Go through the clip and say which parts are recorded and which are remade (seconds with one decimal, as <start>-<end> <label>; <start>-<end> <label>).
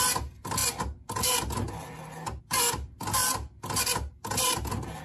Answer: 0.0-5.0 recorded